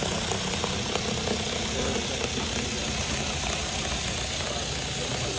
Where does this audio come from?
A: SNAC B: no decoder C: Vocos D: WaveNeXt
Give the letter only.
B